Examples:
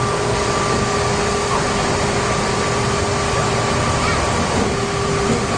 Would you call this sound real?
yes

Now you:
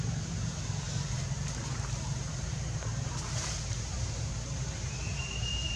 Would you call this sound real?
no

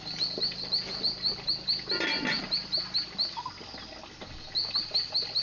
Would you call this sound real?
yes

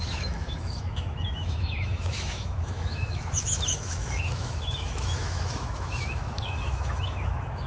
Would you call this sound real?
no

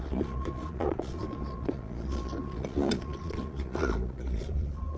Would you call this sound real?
no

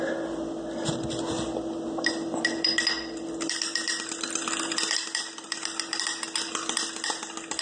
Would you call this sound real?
no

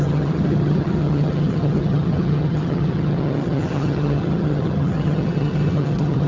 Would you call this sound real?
no